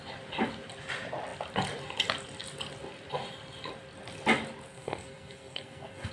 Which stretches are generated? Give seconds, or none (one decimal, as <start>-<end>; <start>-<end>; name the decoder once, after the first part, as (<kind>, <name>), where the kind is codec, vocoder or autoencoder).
4.7-6.1 (codec, SNAC)